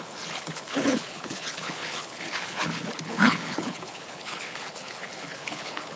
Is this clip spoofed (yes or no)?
yes